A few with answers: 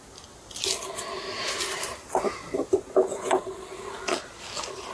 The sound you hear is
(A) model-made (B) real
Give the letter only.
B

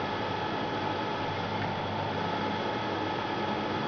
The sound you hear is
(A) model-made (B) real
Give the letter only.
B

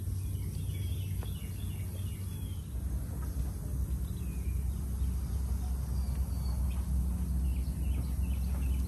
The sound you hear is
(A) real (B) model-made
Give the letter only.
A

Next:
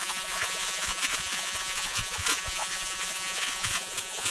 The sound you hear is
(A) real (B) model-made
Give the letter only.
B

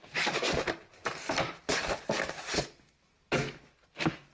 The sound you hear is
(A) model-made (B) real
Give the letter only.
B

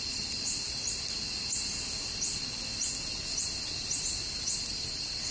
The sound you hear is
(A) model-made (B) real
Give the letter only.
B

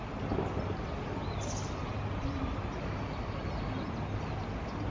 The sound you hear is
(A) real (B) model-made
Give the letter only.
A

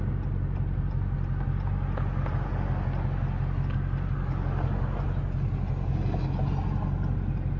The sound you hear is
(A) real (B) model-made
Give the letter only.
A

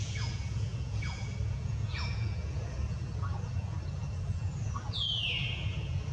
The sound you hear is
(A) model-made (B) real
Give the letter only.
A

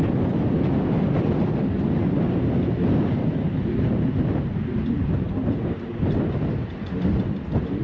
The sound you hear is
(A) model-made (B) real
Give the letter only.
B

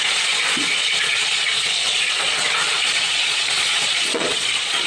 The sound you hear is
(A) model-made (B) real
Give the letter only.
A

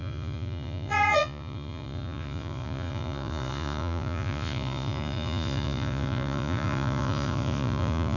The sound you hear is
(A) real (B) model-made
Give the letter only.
B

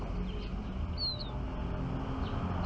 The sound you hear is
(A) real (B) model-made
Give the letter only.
A